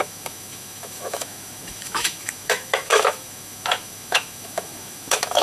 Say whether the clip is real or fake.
fake